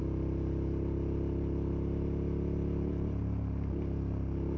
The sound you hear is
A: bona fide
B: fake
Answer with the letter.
A